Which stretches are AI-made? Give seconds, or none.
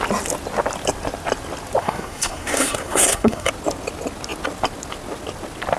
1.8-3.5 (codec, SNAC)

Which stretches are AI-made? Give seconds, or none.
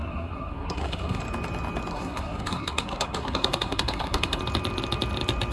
0.0-1.2 (codec, SNAC); 1.9-4.4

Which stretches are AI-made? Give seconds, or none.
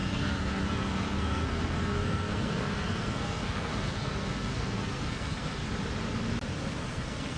0.0-5.6 (codec, SNAC); 6.8-7.4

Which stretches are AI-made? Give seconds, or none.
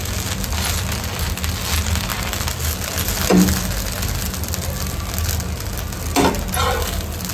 none